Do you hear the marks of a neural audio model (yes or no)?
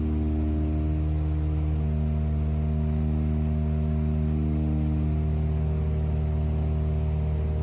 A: no